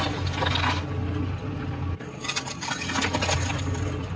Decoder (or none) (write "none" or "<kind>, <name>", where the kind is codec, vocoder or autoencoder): vocoder, BigVGAN v2